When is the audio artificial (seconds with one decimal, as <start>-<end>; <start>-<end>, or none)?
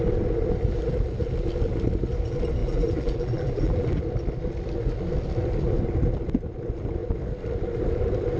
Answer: 2.6-4.0